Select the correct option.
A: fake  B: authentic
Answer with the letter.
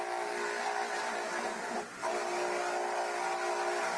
B